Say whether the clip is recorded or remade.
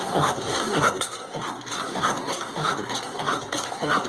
remade